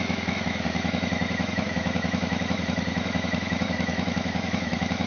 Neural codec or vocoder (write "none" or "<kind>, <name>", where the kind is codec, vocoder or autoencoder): autoencoder, DAC-VAE